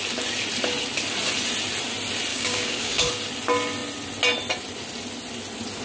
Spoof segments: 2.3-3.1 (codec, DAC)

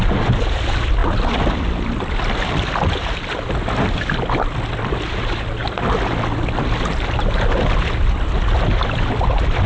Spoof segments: none